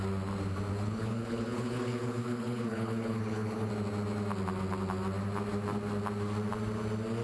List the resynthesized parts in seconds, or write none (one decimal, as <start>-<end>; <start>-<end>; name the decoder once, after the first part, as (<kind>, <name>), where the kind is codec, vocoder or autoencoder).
0.7-3.7 (codec, HILCodec)